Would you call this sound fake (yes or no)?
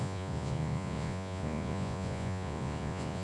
yes